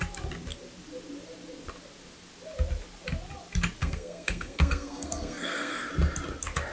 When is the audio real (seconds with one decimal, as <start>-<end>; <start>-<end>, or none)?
0.0-3.8; 5.9-6.7